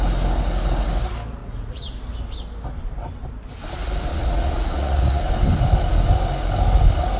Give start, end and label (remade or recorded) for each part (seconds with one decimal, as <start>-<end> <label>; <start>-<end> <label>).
0.0-1.4 recorded; 1.4-2.0 remade; 2.0-4.1 recorded; 4.1-5.3 remade; 5.3-7.2 recorded